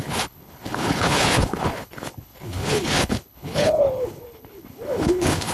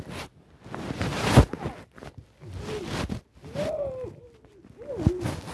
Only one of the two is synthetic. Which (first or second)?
first